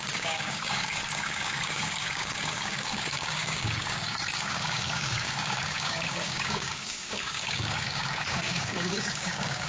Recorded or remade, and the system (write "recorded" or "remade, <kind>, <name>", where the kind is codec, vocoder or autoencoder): remade, codec, DAC